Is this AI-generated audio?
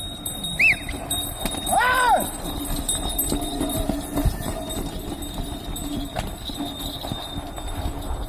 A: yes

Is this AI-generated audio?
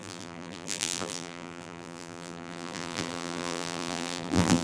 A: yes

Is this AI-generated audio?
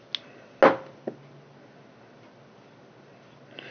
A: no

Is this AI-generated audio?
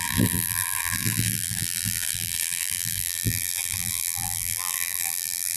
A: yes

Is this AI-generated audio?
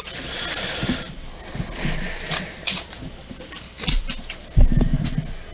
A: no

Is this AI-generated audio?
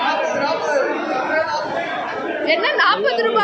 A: no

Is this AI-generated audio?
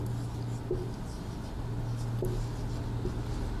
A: no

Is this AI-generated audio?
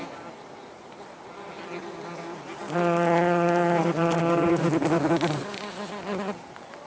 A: no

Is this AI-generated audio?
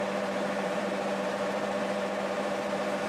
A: yes